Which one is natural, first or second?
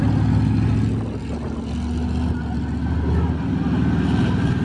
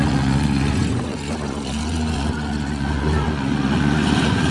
first